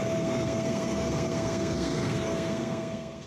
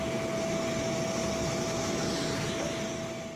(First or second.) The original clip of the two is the second